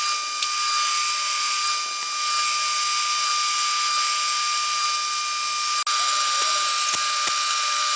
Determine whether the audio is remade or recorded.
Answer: recorded